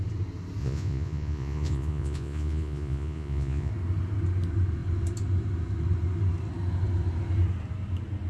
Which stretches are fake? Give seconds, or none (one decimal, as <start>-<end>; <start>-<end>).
0.6-3.7